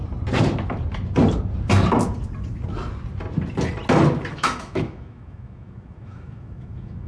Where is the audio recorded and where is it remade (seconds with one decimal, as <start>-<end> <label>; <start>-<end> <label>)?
0.0-4.3 recorded; 4.3-7.1 remade